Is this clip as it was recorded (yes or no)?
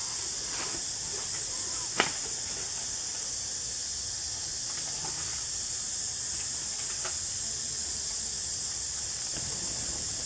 no